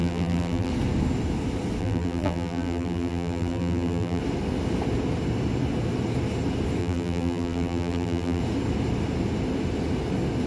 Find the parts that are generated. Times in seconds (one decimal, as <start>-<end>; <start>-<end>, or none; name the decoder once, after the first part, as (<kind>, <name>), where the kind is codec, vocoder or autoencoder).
0.0-0.7 (vocoder, BigVGAN v2); 1.8-4.2; 6.8-8.4